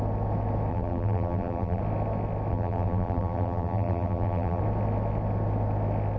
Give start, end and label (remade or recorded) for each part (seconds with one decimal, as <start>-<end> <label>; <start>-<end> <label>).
0.0-0.7 recorded; 0.7-1.8 remade; 1.8-2.5 recorded; 2.5-4.6 remade; 4.6-6.2 recorded